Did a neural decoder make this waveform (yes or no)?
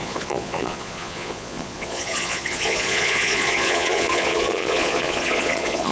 yes